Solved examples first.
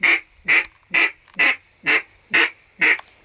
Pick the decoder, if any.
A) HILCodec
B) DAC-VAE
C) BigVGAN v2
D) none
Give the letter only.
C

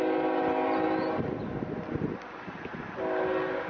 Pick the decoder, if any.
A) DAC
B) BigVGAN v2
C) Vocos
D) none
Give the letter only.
D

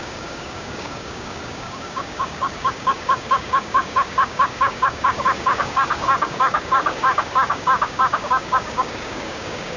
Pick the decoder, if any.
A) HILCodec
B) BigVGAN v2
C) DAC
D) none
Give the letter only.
C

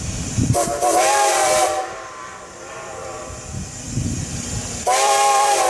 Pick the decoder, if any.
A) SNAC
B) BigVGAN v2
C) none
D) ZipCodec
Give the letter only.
B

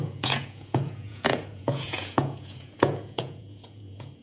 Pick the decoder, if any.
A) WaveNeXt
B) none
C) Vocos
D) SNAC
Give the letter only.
C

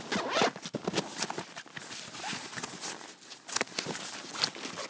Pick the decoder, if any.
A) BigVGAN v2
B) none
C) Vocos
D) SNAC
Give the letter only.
B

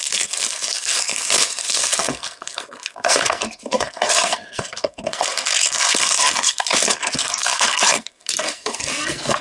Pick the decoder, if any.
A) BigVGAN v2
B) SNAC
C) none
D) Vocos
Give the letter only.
B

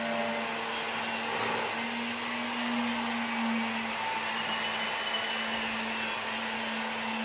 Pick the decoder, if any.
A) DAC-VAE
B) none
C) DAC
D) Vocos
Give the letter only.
B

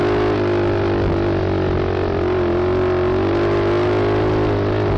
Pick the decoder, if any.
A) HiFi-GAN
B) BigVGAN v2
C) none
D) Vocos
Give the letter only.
C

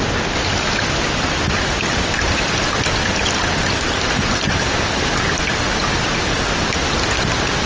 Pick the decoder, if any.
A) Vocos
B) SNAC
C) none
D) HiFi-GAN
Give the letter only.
C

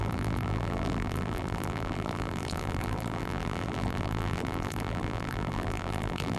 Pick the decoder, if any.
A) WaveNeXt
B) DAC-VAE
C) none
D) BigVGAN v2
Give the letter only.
D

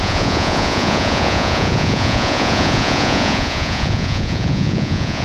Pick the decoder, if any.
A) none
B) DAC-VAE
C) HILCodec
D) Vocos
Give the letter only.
D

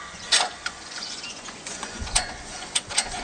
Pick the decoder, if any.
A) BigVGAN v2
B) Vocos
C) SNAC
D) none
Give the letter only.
B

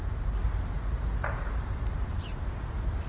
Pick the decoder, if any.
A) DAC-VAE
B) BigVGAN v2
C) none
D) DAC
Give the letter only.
C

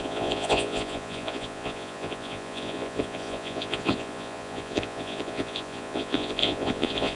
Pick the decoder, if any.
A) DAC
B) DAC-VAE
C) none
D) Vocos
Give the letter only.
D